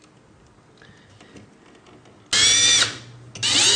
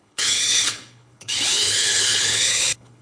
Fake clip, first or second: second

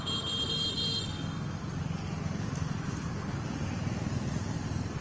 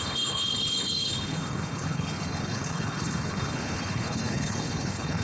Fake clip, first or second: second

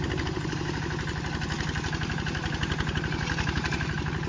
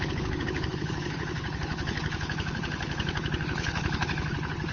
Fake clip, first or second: second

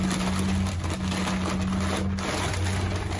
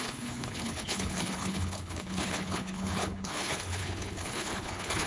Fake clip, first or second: second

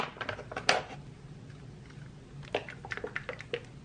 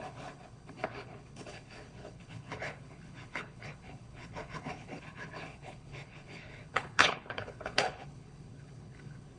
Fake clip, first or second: second